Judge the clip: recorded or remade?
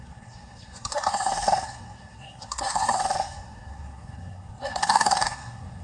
remade